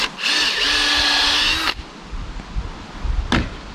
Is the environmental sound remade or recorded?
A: recorded